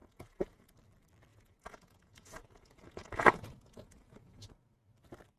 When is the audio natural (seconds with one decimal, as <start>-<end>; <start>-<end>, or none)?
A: 0.7-1.3; 4.5-5.4